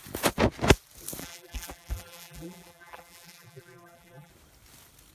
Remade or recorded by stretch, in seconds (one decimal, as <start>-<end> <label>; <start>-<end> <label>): 0.0-1.2 recorded; 1.2-4.3 remade; 4.3-5.1 recorded